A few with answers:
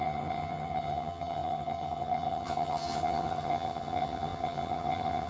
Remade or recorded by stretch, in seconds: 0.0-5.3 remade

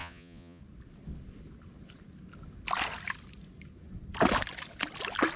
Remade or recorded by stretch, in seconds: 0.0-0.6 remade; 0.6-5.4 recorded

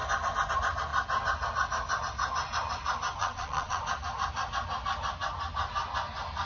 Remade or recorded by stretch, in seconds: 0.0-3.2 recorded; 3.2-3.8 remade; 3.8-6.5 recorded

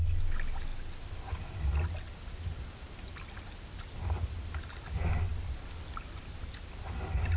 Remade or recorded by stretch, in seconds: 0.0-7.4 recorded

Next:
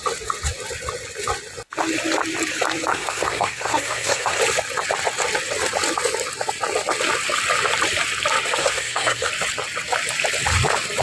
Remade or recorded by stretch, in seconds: 0.0-2.9 recorded; 2.9-4.4 remade; 4.4-8.6 recorded; 8.6-9.3 remade; 9.3-11.0 recorded